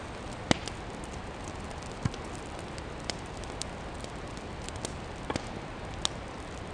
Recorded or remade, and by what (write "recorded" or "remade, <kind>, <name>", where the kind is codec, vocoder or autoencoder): recorded